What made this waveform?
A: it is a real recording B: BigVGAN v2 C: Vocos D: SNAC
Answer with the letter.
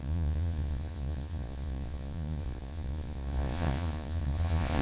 C